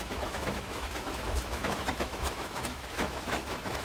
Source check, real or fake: fake